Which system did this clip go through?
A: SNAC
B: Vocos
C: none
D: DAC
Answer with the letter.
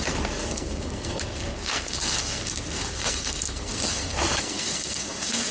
A